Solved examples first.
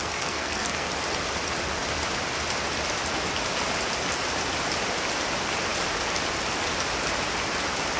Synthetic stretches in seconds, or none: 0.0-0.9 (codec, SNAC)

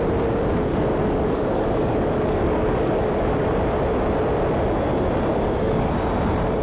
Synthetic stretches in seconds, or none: 0.7-3.5 (codec, DAC); 5.3-5.9